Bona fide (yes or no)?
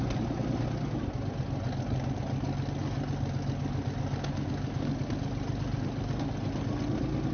yes